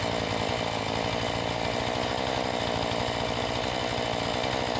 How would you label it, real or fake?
real